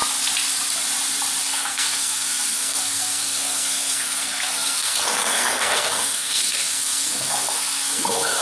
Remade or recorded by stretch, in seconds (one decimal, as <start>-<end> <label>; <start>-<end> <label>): 0.0-1.4 recorded; 1.4-8.4 remade